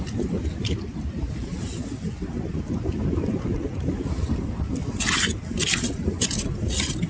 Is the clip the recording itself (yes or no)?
no